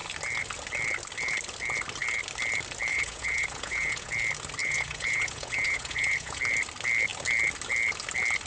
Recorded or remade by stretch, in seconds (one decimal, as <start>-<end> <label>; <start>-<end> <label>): 0.0-2.9 recorded; 2.9-4.1 remade; 4.1-4.6 recorded; 4.6-6.4 remade; 6.4-8.5 recorded